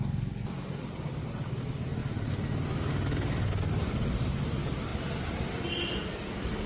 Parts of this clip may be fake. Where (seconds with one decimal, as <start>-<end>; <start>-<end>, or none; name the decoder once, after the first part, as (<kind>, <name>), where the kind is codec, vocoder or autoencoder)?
none